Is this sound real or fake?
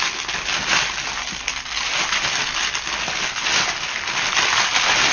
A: real